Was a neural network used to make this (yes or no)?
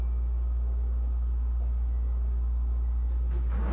no